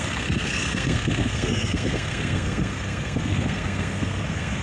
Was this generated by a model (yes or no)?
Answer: yes